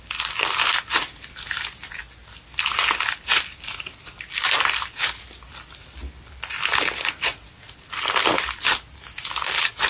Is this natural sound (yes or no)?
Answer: yes